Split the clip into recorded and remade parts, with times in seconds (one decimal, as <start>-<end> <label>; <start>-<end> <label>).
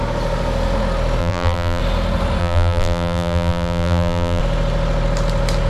0.0-1.2 recorded; 1.2-1.8 remade; 1.8-2.4 recorded; 2.4-4.4 remade; 4.4-5.7 recorded